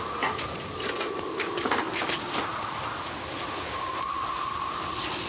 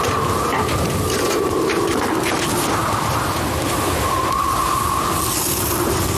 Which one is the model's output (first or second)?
second